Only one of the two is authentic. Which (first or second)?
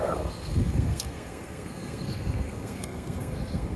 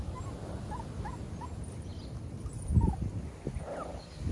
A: second